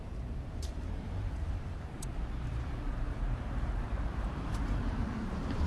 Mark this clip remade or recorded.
remade